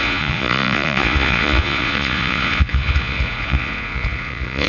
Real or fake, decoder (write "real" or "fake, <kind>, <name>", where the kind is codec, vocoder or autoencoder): fake, vocoder, Vocos